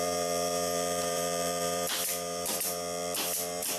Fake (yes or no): yes